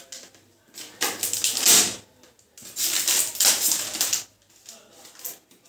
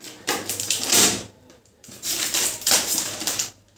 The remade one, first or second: second